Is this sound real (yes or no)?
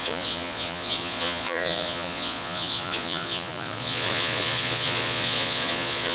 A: no